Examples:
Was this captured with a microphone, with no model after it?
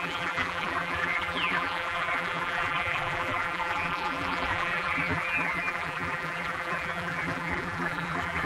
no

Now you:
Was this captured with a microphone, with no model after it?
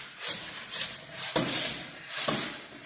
yes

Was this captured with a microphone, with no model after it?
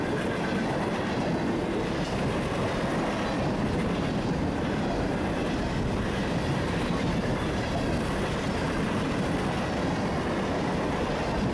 yes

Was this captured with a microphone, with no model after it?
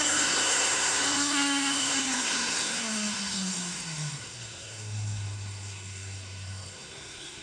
no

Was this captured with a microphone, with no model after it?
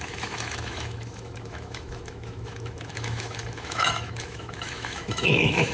no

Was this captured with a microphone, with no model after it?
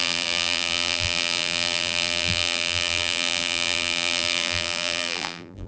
no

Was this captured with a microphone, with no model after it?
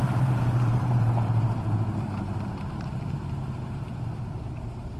no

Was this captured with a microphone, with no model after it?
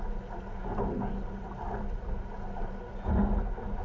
yes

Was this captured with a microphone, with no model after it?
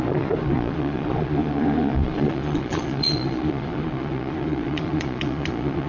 no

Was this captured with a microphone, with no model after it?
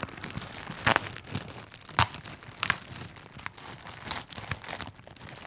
yes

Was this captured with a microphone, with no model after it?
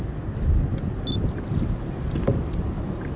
yes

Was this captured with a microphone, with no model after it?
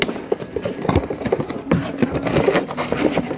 yes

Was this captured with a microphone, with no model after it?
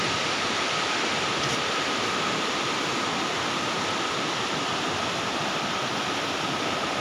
yes